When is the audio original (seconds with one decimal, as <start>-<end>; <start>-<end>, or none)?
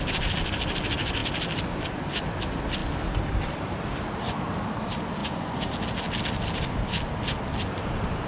0.0-5.2; 5.7-8.3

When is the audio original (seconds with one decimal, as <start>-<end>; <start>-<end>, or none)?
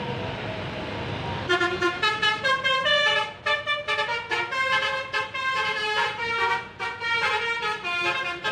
0.0-1.5; 3.4-4.1; 7.3-8.5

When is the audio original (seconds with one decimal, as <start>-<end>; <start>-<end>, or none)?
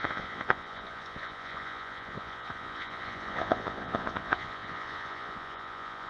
none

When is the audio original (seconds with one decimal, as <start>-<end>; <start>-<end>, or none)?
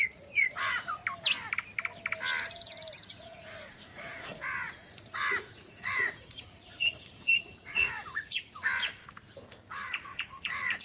1.0-3.2; 9.0-9.7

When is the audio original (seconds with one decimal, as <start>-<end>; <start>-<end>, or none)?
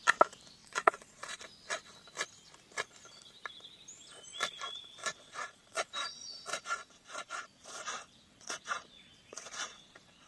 0.0-0.6; 1.4-5.0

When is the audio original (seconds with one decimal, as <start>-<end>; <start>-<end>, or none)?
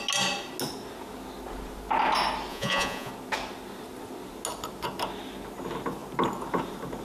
0.0-2.5; 3.1-7.0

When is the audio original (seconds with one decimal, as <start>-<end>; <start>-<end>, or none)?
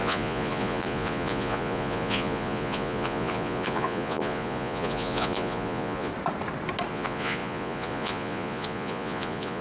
6.1-6.9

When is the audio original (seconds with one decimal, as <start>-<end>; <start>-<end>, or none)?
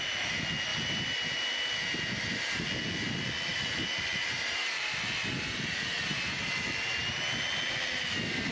0.0-8.5